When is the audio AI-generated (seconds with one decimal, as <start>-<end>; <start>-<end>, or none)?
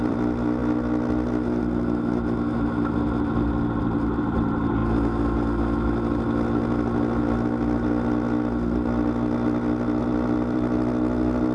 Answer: 0.0-0.6; 3.8-4.8; 10.0-11.5